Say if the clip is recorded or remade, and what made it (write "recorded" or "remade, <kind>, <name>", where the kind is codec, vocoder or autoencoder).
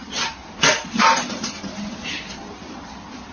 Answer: recorded